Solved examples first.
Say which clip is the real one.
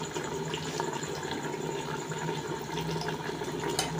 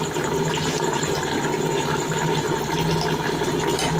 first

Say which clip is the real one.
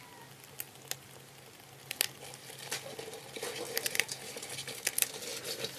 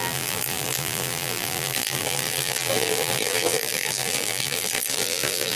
first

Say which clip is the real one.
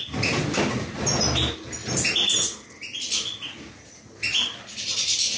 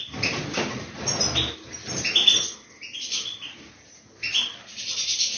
first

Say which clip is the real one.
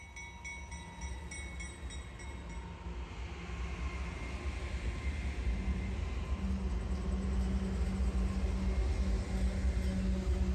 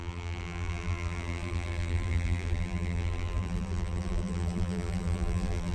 first